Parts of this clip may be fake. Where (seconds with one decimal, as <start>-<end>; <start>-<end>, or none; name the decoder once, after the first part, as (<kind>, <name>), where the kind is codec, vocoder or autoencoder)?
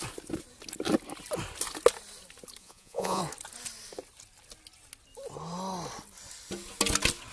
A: 2.6-3.2 (vocoder, Vocos)